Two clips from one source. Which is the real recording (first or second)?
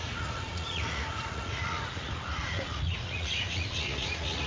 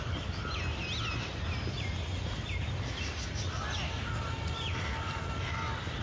second